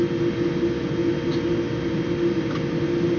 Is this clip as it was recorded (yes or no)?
yes